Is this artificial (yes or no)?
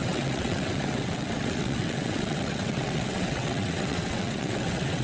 yes